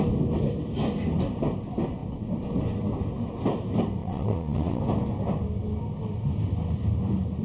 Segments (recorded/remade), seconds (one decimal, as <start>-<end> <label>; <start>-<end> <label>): 0.0-4.0 recorded; 4.0-4.8 remade; 4.8-7.4 recorded